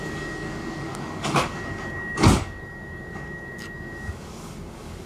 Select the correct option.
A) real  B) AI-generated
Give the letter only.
B